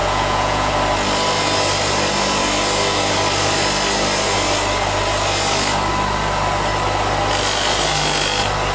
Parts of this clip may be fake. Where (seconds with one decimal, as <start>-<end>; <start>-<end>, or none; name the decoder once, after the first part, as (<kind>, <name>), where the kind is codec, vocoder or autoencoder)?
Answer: 0.0-0.7 (vocoder, Vocos)